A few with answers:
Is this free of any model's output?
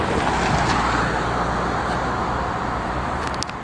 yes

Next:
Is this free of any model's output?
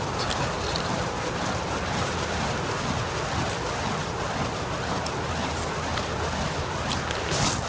yes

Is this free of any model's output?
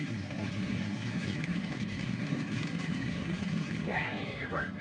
no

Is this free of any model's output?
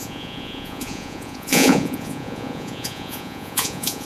no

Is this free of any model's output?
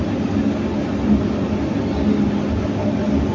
yes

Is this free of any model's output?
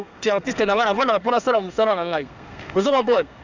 no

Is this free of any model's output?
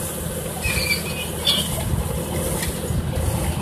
yes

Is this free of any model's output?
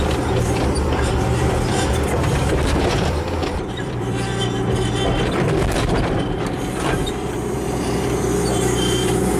no